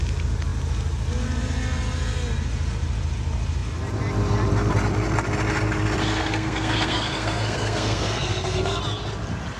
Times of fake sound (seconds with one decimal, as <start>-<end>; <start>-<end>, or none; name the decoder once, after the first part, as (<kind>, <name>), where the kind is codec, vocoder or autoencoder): 6.0-8.8 (codec, SNAC)